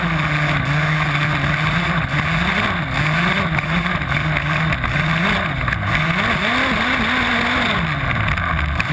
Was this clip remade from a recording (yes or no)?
no